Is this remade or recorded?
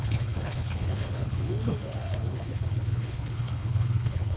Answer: remade